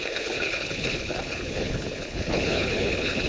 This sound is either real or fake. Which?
fake